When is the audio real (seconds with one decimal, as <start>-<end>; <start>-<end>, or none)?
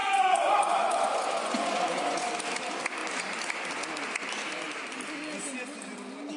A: 2.3-6.4